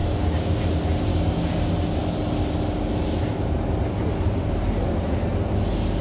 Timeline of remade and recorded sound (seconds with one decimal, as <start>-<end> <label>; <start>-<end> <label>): 0.0-0.6 remade; 0.6-1.1 recorded; 1.1-1.6 remade; 1.6-6.0 recorded